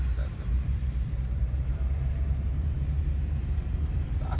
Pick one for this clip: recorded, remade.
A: remade